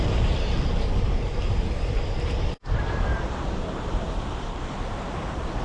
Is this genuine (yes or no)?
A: no